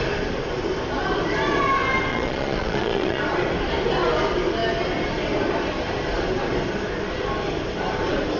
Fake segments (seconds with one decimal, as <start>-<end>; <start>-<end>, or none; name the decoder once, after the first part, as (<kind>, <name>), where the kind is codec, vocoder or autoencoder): 2.1-3.2 (vocoder, Vocos)